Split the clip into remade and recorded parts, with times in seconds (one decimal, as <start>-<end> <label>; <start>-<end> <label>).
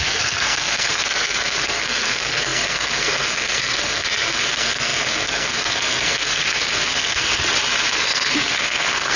0.0-7.4 remade; 7.4-7.9 recorded; 7.9-9.2 remade